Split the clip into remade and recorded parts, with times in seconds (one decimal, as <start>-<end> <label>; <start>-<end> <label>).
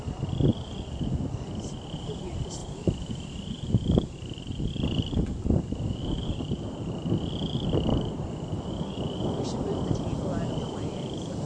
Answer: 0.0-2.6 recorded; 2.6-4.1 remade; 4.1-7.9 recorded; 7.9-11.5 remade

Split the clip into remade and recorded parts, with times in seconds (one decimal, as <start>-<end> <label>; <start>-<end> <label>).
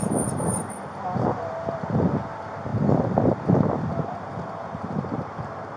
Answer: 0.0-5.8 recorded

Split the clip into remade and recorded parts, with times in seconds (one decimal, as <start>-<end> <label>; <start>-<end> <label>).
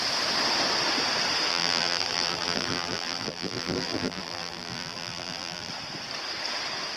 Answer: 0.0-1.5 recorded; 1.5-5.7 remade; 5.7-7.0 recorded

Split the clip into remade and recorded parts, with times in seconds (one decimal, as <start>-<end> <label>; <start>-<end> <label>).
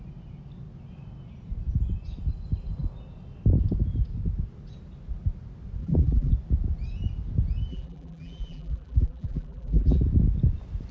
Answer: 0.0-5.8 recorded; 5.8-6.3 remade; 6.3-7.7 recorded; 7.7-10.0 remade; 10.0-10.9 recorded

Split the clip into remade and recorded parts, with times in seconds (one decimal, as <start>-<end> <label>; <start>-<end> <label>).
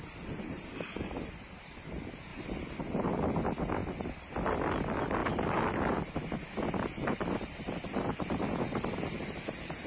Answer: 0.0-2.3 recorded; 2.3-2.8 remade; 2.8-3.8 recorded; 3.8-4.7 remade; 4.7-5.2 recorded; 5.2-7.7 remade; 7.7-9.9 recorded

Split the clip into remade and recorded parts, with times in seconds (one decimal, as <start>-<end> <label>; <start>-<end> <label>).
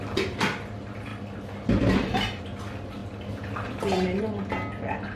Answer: 0.0-5.2 recorded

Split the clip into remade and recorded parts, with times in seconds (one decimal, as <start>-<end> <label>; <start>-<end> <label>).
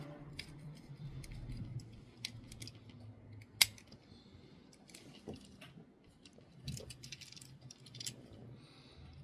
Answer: 0.0-1.7 remade; 1.7-6.5 recorded; 6.5-8.4 remade; 8.4-9.2 recorded